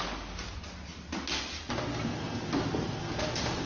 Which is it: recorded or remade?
recorded